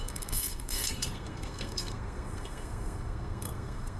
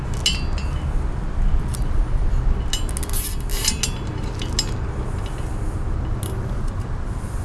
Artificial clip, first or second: first